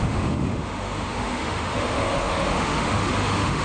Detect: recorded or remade remade